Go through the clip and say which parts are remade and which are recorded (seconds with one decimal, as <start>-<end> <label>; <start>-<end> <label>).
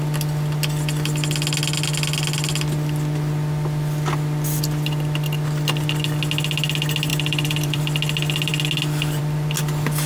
0.0-7.1 recorded; 7.1-7.8 remade; 7.8-10.1 recorded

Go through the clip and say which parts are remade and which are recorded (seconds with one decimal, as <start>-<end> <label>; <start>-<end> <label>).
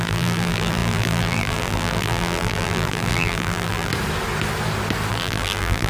0.0-3.9 remade; 3.9-5.1 recorded; 5.1-5.9 remade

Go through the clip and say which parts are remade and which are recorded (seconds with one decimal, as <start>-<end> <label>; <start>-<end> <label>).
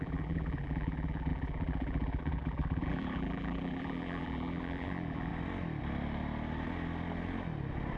0.0-5.3 remade; 5.3-8.0 recorded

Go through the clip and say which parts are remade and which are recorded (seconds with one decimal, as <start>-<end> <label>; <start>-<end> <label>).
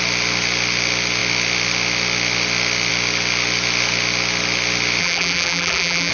0.0-5.0 recorded; 5.0-6.1 remade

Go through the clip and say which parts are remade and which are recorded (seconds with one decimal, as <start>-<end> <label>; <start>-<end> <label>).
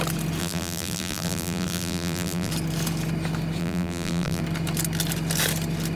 0.0-0.4 recorded; 0.4-2.5 remade; 2.5-3.6 recorded; 3.6-4.4 remade; 4.4-6.0 recorded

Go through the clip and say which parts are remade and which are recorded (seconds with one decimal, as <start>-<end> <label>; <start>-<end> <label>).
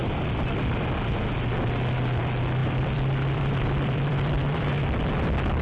0.0-2.6 recorded; 2.6-4.7 remade; 4.7-5.6 recorded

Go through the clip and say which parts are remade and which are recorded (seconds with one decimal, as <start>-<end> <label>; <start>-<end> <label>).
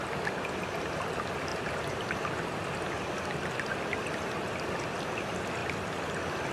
0.0-6.5 recorded